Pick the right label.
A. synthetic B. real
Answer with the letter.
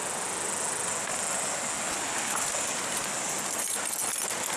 B